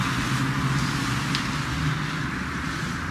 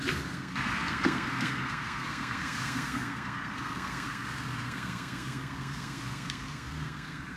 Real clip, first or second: first